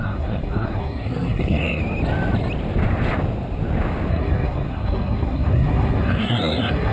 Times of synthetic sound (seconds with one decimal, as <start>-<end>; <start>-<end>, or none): 0.0-1.8; 4.1-6.9